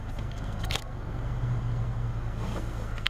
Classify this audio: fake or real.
fake